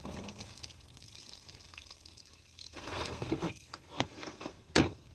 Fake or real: fake